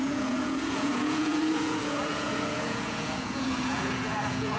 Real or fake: fake